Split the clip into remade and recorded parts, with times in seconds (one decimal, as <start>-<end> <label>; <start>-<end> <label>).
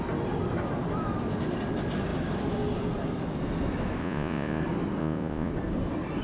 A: 0.0-4.0 recorded; 4.0-4.6 remade; 4.6-5.0 recorded; 5.0-5.5 remade; 5.5-6.2 recorded